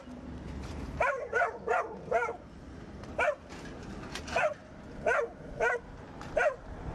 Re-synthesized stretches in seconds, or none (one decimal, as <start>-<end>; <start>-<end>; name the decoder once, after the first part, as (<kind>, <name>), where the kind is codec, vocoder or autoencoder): 0.0-4.6 (vocoder, BigVGAN v2); 6.0-6.9

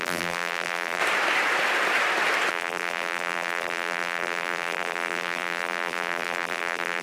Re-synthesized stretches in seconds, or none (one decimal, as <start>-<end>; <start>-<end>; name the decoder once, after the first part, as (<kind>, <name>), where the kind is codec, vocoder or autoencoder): 0.0-1.0 (vocoder, BigVGAN v2); 2.5-7.0

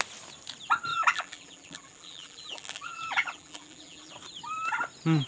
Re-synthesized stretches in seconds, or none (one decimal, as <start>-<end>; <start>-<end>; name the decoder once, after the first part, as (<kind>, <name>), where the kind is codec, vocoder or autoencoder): 0.9-4.1 (vocoder, BigVGAN v2)

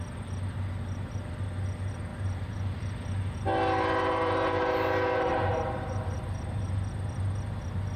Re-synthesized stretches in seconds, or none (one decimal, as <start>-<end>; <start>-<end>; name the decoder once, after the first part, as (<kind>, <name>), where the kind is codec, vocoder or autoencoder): 5.3-6.7 (vocoder, BigVGAN v2)

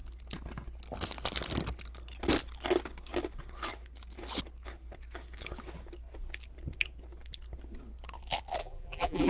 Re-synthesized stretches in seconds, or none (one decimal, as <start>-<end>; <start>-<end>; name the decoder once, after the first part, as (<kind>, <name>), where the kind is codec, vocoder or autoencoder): 8.6-9.3 (vocoder, BigVGAN v2)